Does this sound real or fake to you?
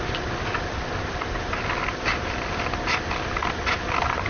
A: real